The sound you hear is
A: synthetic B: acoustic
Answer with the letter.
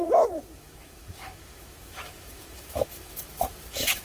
A